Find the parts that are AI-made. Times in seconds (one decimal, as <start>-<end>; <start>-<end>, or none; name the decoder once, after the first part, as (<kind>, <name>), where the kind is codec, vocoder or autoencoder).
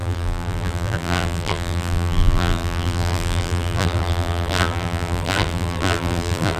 0.0-6.6 (vocoder, BigVGAN v2)